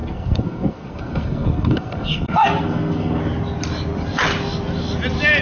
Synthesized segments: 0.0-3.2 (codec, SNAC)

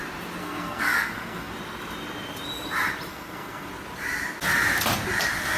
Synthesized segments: 0.4-1.5 (codec, SNAC); 3.1-3.7

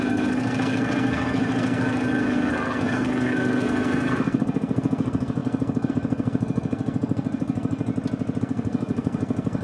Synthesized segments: 0.0-7.9 (codec, SNAC); 8.4-9.6

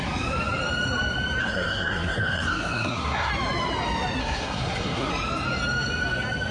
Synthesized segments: 1.4-3.3 (codec, SNAC); 4.2-5.1

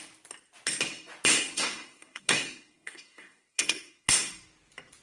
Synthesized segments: 1.3-4.3 (codec, SNAC)